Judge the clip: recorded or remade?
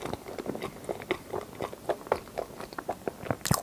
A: recorded